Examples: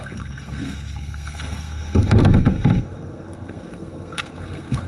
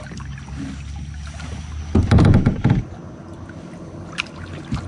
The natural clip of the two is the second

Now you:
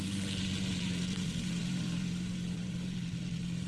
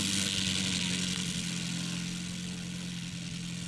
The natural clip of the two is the second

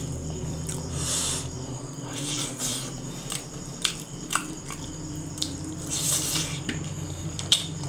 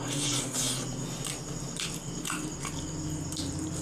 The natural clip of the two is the second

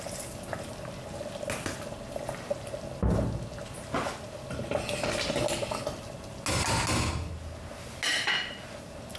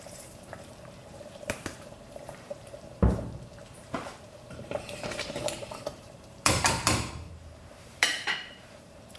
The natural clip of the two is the first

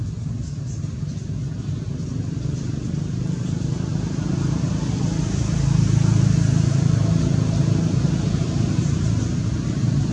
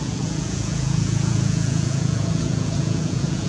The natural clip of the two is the first